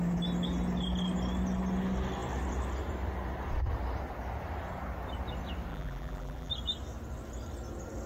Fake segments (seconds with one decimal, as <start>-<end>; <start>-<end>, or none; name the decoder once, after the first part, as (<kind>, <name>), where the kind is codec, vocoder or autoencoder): 5.7-6.5 (vocoder, BigVGAN v2)